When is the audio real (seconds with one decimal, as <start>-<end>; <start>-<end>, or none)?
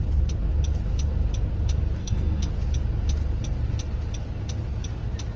0.0-2.0; 2.5-5.4